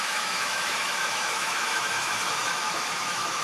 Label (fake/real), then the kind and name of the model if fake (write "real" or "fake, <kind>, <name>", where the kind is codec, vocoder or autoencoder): fake, autoencoder, DAC-VAE